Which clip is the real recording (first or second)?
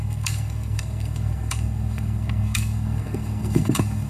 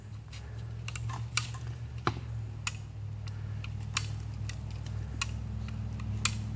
second